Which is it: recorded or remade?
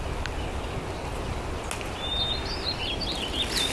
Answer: recorded